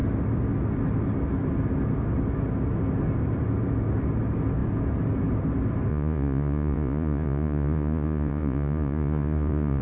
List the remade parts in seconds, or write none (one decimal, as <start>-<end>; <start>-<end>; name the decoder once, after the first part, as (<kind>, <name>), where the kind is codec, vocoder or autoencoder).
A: 5.9-9.8 (vocoder, Vocos)